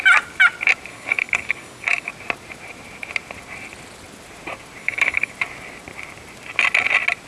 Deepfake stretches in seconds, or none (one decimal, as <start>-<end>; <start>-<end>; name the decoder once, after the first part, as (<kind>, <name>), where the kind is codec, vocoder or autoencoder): 0.9-2.1 (codec, DAC); 4.8-5.3